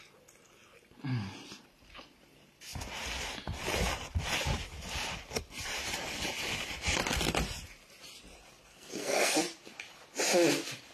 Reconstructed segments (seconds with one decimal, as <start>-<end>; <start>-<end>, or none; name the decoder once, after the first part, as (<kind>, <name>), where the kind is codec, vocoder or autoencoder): 8.7-9.4 (codec, SNAC)